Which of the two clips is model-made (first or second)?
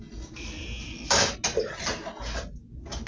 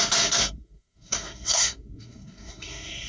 second